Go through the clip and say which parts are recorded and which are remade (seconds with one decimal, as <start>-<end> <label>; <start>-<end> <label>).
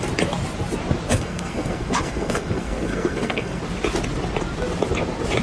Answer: 0.0-1.1 recorded; 1.1-3.6 remade; 3.6-5.4 recorded